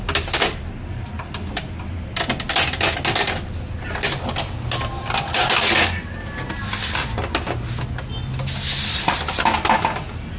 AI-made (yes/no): no